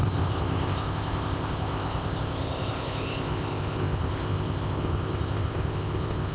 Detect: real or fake fake